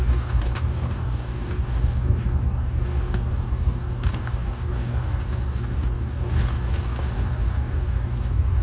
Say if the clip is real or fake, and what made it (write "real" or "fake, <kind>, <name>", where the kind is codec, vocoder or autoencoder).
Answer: fake, codec, DAC